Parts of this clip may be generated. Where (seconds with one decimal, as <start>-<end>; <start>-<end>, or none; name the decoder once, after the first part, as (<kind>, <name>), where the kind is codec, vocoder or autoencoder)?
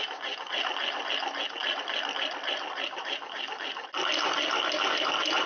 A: none